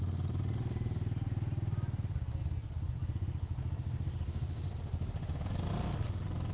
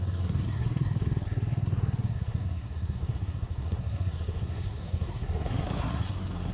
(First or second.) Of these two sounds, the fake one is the second